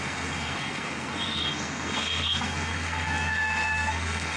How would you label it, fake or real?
fake